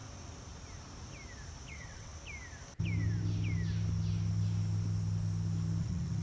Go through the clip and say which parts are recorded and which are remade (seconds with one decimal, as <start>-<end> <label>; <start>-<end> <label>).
0.0-1.7 recorded; 1.7-2.1 remade; 2.1-5.8 recorded; 5.8-6.2 remade